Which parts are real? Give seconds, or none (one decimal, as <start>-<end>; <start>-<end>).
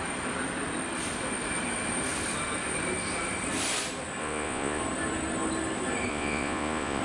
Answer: 0.0-4.2; 4.8-6.1